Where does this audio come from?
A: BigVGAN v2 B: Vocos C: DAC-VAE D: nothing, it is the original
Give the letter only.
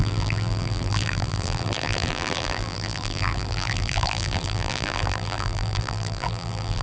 A